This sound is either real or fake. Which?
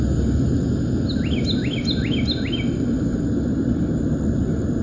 real